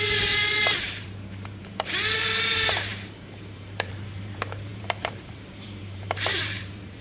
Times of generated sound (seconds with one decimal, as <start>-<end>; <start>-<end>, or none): 0.0-7.0